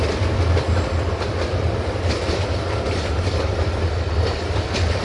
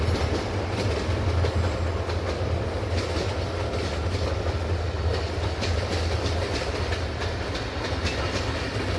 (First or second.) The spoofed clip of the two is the first